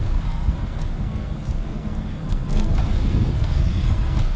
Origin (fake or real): fake